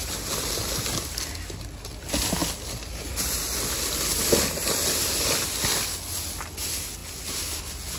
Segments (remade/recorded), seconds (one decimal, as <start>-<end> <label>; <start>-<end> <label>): 0.0-8.0 recorded